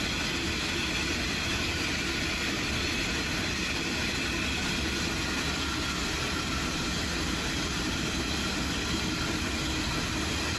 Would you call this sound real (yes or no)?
yes